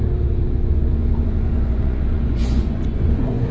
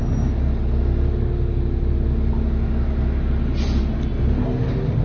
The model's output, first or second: first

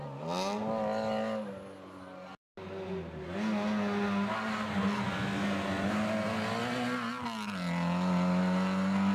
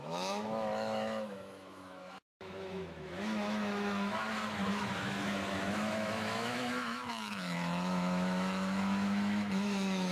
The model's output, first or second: second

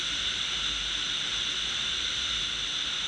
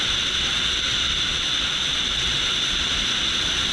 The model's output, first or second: second